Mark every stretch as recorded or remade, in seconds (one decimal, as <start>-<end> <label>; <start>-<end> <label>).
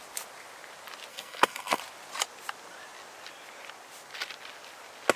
0.0-1.1 recorded; 1.1-1.8 remade; 1.8-5.2 recorded